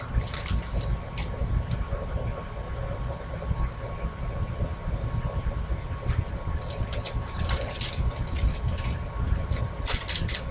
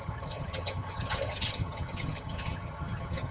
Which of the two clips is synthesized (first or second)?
second